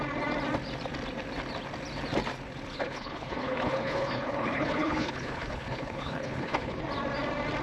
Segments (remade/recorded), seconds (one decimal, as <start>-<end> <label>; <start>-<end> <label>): 0.0-2.7 recorded; 2.7-6.8 remade; 6.8-7.6 recorded